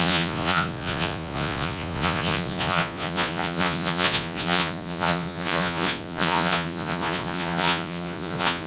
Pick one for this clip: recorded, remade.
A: remade